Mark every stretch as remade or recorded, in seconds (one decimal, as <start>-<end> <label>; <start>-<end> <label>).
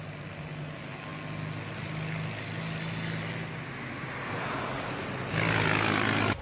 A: 0.0-6.4 recorded